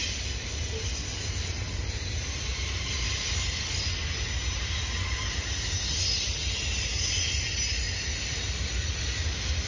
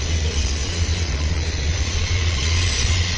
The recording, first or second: first